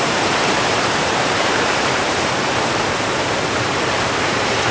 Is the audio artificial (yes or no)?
yes